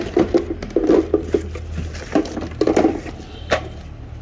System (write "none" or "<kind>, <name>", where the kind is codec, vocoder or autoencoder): none